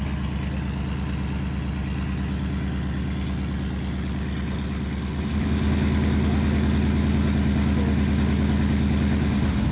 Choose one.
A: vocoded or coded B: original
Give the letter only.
B